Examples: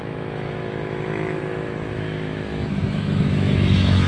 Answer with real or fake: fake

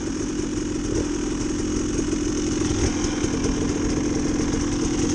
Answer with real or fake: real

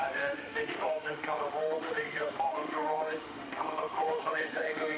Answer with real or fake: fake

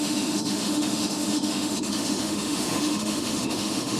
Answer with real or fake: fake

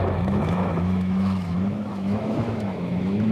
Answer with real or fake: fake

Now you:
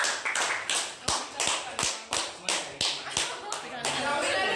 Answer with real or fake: real